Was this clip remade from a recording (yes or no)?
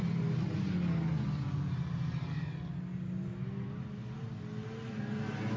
no